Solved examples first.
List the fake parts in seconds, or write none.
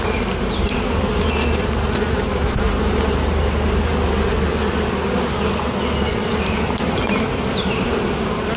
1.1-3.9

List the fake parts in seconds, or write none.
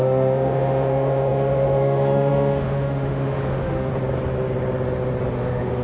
0.0-3.9; 5.3-5.8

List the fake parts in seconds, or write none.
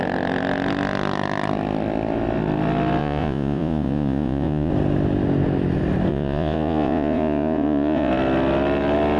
3.0-4.7; 6.1-8.1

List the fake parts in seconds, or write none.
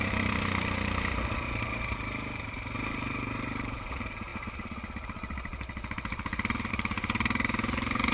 0.0-8.1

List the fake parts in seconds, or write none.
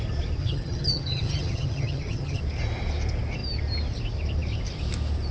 0.4-2.4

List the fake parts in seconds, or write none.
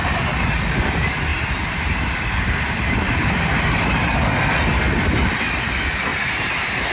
1.3-3.9; 6.1-6.9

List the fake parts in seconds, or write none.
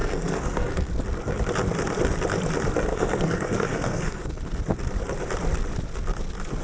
0.0-0.9; 2.9-4.4